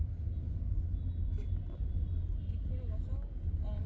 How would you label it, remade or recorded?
recorded